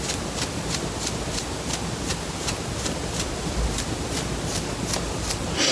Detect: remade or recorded recorded